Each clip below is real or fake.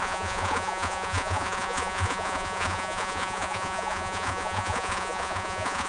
fake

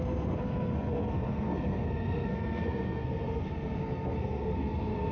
fake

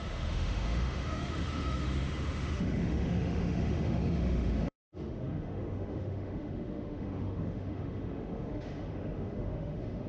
fake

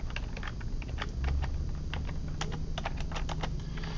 real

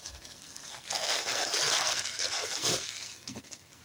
fake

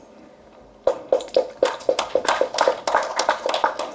real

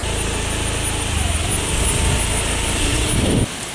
real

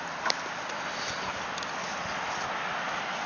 real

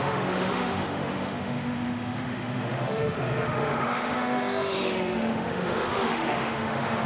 fake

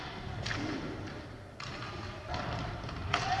real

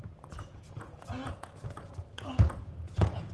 fake